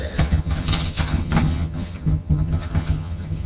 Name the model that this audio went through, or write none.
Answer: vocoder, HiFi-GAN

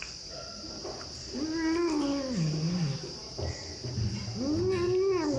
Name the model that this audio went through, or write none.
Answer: none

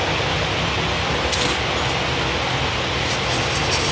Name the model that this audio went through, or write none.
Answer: none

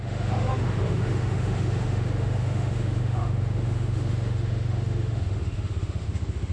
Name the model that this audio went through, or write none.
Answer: autoencoder, DAC-VAE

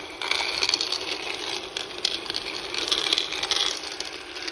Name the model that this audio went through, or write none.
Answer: none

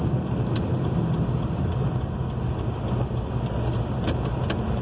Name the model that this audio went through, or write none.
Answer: none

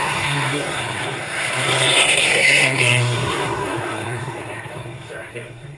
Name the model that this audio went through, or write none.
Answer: codec, SNAC